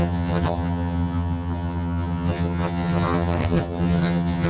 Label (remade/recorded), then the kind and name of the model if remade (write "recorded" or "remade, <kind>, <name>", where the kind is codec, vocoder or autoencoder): remade, vocoder, HiFi-GAN